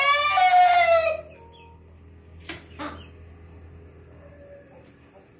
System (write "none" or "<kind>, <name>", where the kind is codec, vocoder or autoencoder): none